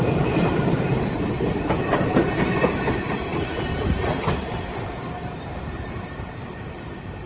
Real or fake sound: fake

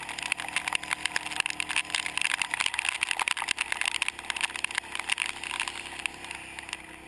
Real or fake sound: real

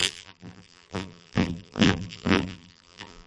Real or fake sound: fake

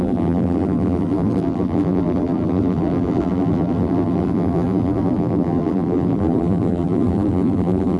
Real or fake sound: fake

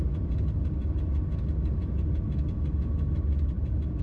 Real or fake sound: real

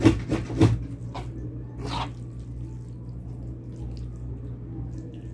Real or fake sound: real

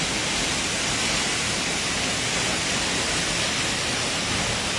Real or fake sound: real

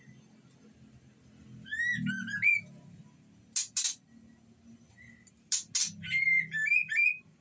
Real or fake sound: real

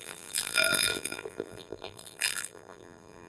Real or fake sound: fake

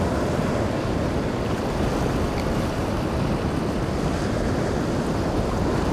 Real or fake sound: real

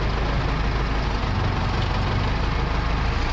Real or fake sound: real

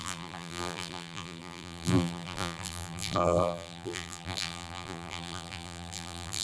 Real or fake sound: fake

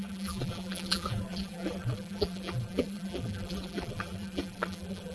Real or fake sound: fake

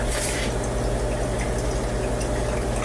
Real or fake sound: real